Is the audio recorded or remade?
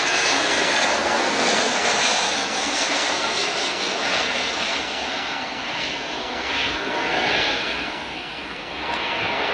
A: remade